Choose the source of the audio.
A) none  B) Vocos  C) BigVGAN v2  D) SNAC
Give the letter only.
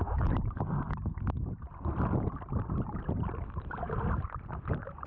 A